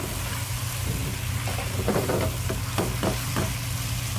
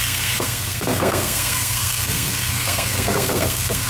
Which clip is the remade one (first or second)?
second